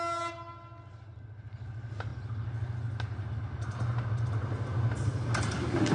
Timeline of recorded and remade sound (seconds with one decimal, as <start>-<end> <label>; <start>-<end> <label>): 0.0-5.9 recorded